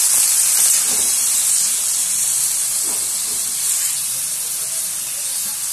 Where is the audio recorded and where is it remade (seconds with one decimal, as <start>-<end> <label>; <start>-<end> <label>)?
0.0-5.7 recorded